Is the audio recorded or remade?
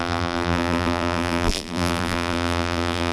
remade